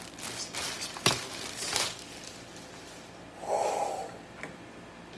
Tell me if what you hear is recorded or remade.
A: recorded